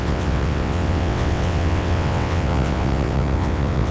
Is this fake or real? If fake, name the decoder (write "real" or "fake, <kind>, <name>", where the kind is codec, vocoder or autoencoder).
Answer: fake, vocoder, WaveNeXt